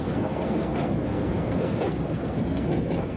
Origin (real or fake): fake